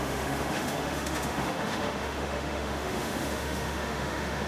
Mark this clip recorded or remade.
remade